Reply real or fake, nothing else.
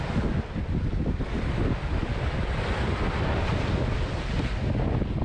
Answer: real